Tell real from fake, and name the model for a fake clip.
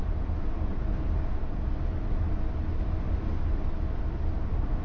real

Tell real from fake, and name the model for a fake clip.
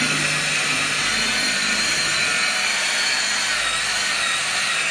real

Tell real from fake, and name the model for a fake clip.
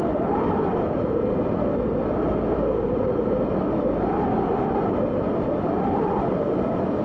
real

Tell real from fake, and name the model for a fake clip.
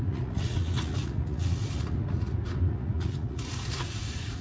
fake, vocoder, Vocos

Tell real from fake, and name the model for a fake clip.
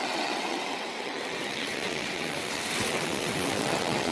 fake, vocoder, WaveNeXt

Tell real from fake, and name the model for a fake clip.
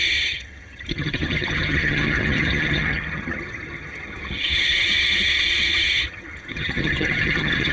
fake, vocoder, HiFi-GAN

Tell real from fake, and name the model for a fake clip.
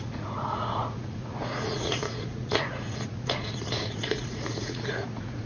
fake, vocoder, Vocos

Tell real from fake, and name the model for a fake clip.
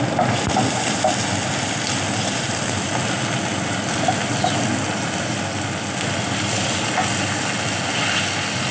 real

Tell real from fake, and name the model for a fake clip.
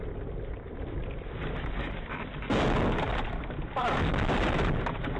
real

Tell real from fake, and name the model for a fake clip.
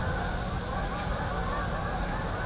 real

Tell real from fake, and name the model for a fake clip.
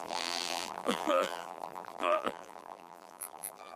fake, vocoder, BigVGAN v2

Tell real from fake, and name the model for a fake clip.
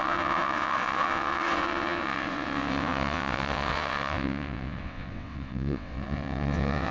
fake, vocoder, WaveNeXt